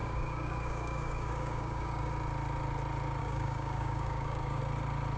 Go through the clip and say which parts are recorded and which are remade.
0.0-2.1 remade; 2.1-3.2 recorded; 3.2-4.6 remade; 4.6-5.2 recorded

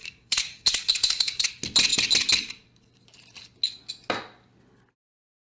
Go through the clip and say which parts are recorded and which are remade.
0.0-1.5 remade; 1.5-5.4 recorded

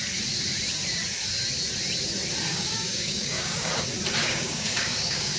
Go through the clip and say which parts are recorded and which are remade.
0.0-2.5 recorded; 2.5-3.7 remade; 3.7-4.2 recorded; 4.2-5.4 remade

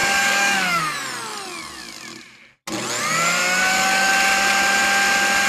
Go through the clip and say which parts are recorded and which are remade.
0.0-0.8 remade; 0.8-3.4 recorded; 3.4-4.1 remade; 4.1-5.5 recorded

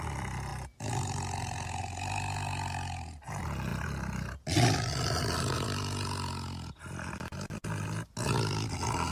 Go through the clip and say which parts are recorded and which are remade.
0.0-9.1 recorded

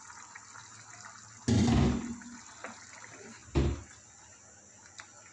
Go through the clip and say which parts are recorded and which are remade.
0.0-5.3 recorded

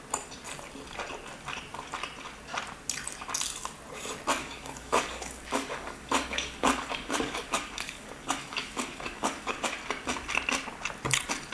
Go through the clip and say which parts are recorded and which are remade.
0.0-4.4 recorded; 4.4-9.6 remade; 9.6-11.5 recorded